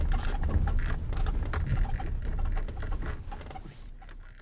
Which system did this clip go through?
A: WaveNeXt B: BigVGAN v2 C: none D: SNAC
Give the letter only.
C